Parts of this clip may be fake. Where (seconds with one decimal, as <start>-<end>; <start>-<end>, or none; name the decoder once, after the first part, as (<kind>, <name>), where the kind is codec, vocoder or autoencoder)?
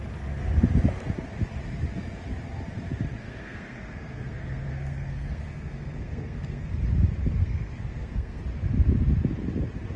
3.2-6.7 (codec, SNAC); 7.4-8.4